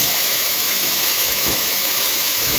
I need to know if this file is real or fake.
fake